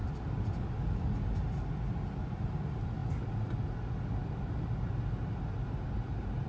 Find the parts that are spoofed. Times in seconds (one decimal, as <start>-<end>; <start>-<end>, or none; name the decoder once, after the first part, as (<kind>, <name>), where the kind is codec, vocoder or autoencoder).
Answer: 0.0-0.8 (vocoder, BigVGAN v2); 3.0-3.5